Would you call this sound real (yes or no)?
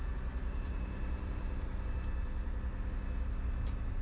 yes